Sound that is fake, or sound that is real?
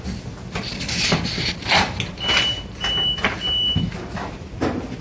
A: real